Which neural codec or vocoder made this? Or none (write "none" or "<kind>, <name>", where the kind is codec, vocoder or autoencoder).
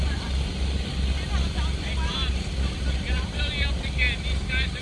none